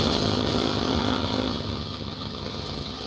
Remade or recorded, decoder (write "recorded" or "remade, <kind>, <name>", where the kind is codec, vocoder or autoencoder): remade, vocoder, HiFi-GAN